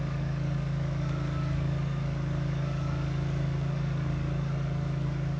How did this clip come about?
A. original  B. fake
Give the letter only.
B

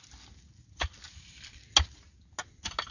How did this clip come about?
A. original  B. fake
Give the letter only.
A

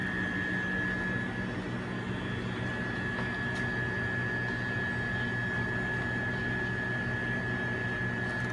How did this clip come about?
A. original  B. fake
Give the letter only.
A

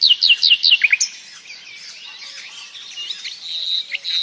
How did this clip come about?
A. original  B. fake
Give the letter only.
A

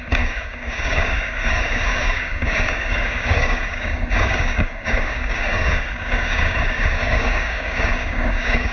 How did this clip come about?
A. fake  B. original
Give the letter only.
A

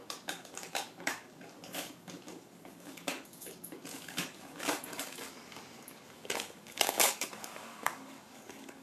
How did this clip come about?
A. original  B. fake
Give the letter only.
B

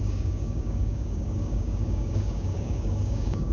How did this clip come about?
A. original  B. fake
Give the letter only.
B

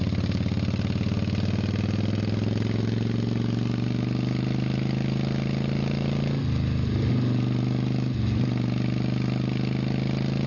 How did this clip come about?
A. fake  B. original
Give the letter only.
B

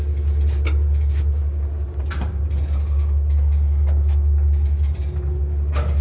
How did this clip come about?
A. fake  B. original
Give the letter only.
B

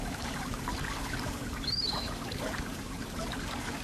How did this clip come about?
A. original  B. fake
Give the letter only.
B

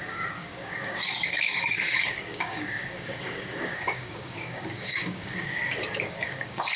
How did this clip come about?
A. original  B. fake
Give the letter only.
B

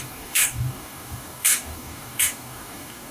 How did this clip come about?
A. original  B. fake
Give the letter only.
B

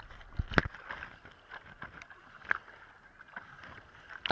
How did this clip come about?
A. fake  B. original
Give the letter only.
B